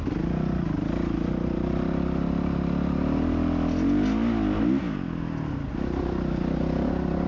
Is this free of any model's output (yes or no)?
yes